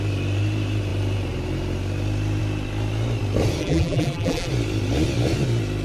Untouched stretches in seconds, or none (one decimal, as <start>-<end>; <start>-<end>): 0.0-3.6; 4.5-5.8